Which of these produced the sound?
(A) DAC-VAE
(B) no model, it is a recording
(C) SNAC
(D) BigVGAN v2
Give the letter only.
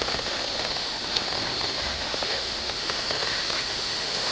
A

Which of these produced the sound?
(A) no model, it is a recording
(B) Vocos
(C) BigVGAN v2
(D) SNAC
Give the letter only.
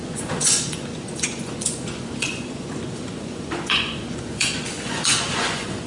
B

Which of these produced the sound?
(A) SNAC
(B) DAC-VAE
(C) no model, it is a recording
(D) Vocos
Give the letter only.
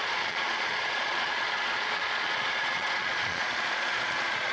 D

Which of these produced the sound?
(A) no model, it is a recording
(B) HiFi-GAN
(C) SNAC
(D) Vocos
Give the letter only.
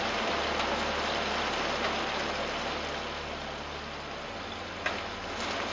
A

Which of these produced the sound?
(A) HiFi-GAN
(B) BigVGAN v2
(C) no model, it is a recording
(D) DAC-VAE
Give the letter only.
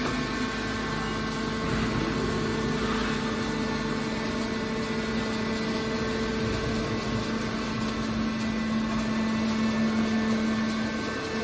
C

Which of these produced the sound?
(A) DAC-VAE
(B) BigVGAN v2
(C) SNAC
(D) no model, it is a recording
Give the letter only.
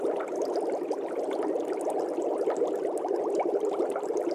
D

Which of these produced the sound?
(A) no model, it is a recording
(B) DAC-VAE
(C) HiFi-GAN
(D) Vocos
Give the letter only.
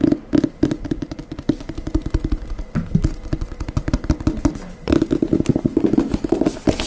A